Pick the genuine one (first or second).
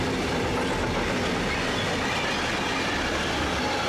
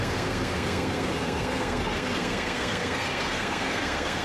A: first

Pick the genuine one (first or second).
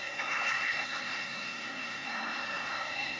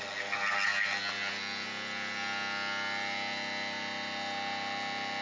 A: second